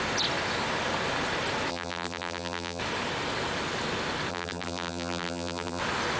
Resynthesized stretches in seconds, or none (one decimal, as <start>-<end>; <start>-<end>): 1.7-2.8; 4.3-5.8